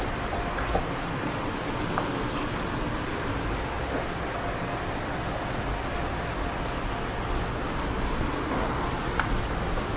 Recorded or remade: recorded